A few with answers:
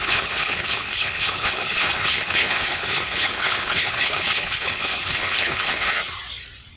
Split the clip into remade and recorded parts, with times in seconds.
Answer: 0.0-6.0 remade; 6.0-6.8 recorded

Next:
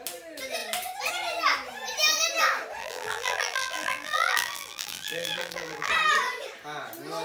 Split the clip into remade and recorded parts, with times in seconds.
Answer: 0.0-2.8 recorded; 2.8-5.9 remade; 5.9-7.2 recorded